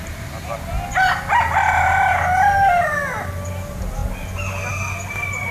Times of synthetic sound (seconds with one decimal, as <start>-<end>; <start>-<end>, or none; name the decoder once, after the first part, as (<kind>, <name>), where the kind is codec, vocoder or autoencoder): none